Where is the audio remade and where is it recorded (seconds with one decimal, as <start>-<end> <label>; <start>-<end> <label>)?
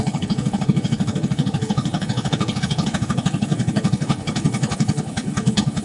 0.0-5.8 remade